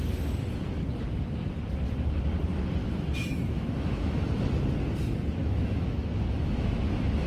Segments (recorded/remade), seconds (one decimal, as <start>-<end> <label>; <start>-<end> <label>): 0.0-2.8 recorded; 2.8-4.2 remade; 4.2-5.4 recorded; 5.4-6.8 remade; 6.8-7.3 recorded